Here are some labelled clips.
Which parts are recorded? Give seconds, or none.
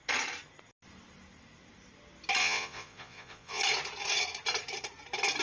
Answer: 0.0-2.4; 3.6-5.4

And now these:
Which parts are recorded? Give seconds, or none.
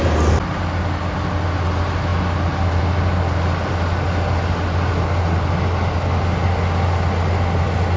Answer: 0.0-8.0